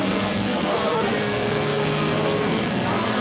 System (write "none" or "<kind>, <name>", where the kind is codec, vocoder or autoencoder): codec, SNAC